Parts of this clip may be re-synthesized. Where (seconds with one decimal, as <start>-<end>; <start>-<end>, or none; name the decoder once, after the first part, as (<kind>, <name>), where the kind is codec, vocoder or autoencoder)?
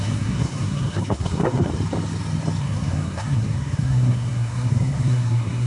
0.0-1.7 (codec, SNAC); 2.6-5.7